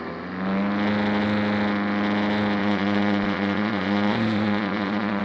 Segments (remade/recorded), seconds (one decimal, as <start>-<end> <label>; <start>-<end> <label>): 0.0-2.6 recorded; 2.6-5.2 remade